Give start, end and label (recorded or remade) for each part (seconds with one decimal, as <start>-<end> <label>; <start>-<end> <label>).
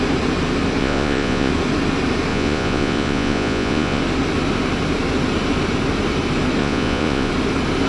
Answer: 0.0-0.8 recorded; 0.8-1.5 remade; 1.5-2.3 recorded; 2.3-4.0 remade; 4.0-6.6 recorded; 6.6-7.3 remade; 7.3-7.9 recorded